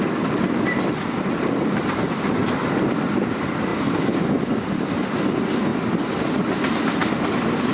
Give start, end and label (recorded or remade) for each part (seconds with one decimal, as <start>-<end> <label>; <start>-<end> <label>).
0.0-7.7 recorded